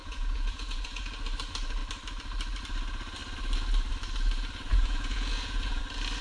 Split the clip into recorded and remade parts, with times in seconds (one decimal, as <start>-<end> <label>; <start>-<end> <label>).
0.0-1.1 remade; 1.1-4.7 recorded; 4.7-5.8 remade; 5.8-6.2 recorded